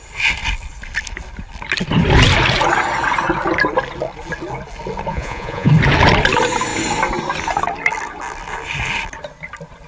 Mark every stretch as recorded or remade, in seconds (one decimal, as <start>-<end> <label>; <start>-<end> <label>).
0.0-5.1 recorded; 5.1-5.7 remade; 5.7-9.9 recorded